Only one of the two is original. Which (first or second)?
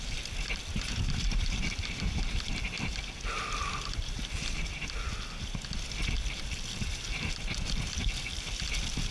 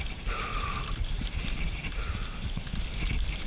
first